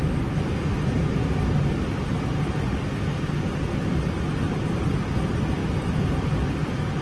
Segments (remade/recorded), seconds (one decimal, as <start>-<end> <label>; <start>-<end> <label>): 0.0-7.0 recorded